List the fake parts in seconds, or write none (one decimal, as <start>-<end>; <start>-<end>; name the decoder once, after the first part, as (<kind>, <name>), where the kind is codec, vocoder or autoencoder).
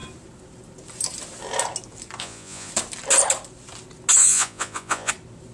2.2-2.7 (vocoder, Vocos); 4.2-5.1